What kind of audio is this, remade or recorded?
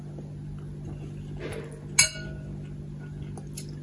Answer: recorded